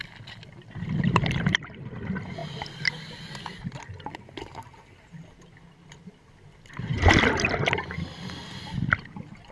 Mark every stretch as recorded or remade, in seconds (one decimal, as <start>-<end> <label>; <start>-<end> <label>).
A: 0.0-2.4 remade; 2.4-6.6 recorded; 6.6-9.5 remade